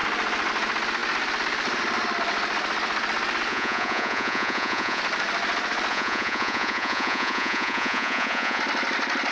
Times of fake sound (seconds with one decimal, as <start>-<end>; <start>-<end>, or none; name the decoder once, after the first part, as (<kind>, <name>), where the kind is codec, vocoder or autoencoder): 3.5-5.0 (vocoder, Vocos); 5.9-8.6